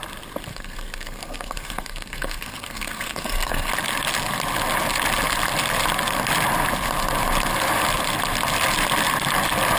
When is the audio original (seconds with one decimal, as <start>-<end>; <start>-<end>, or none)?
0.0-0.5; 3.7-9.8